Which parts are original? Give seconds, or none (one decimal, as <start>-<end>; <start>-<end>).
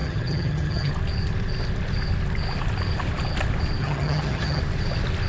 0.9-3.8; 4.6-5.3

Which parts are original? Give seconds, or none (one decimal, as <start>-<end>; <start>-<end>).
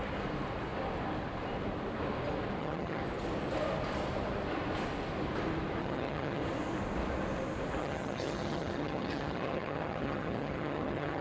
0.0-2.6; 3.0-5.8; 6.4-7.8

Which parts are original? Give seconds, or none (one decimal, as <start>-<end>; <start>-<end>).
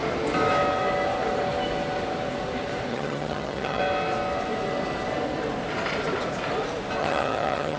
0.0-2.9; 3.8-7.0